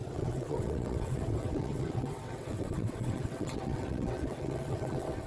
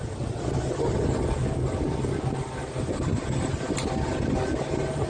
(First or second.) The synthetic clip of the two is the first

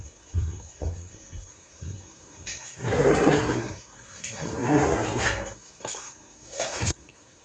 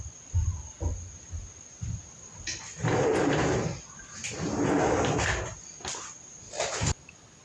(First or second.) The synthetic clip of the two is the first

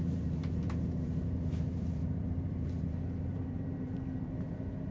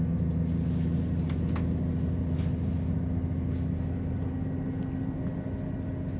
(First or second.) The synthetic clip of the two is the first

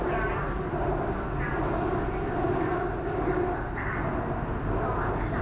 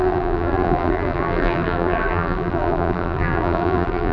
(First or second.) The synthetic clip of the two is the second